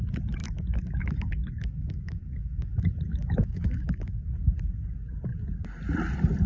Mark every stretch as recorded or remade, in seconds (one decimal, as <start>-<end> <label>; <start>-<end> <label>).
0.0-0.4 recorded; 0.4-4.3 remade; 4.3-6.5 recorded